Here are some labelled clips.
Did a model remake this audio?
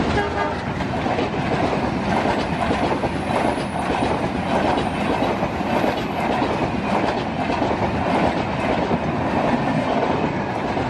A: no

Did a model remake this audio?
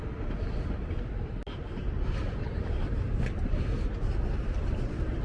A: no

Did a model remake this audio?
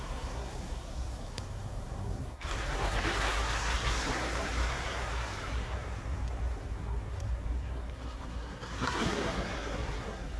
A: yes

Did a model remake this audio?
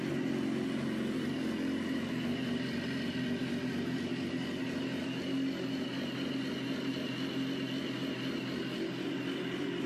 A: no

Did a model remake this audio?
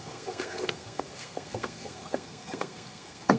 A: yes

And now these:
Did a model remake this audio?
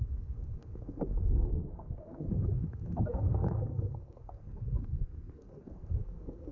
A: yes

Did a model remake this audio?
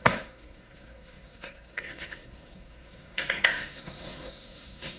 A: yes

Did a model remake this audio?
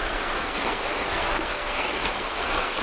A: yes